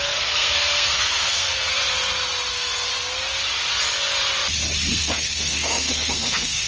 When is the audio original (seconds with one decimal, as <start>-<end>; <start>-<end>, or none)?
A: 1.8-2.5; 2.9-4.9